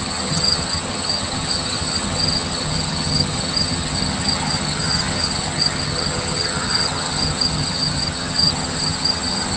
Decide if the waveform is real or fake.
fake